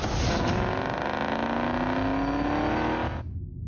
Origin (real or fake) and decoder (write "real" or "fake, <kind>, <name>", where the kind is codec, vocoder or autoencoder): real